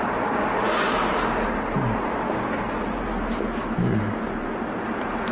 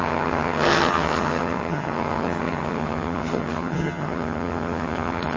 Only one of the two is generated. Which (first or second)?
second